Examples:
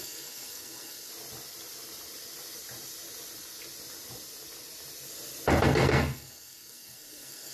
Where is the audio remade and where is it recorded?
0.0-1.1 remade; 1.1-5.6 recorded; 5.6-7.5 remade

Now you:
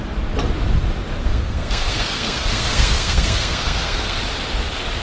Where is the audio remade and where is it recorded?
0.0-1.2 recorded; 1.2-4.2 remade; 4.2-5.0 recorded

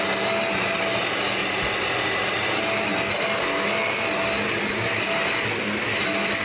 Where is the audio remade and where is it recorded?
0.0-6.4 recorded

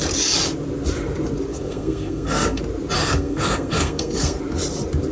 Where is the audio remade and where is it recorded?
0.0-1.5 recorded; 1.5-2.6 remade; 2.6-3.0 recorded; 3.0-4.4 remade; 4.4-5.1 recorded

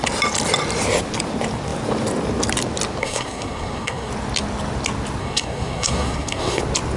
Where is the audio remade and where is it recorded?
0.0-3.0 recorded; 3.0-4.1 remade; 4.1-5.2 recorded; 5.2-6.6 remade; 6.6-7.0 recorded

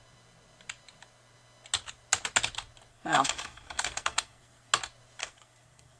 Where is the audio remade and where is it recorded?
0.0-2.9 recorded; 2.9-4.7 remade; 4.7-5.2 recorded; 5.2-6.0 remade